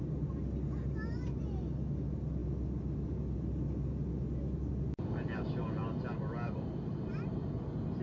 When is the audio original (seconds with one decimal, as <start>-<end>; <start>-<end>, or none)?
0.0-8.0